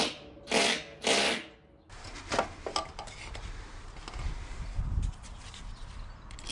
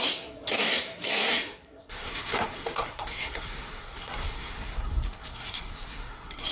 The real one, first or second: first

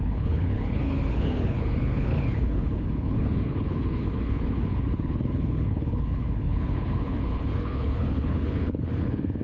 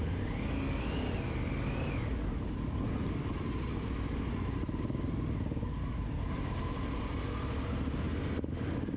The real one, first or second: second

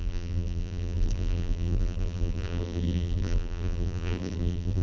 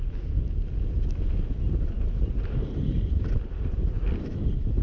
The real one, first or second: second